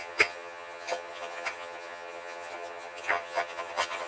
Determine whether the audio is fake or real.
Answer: fake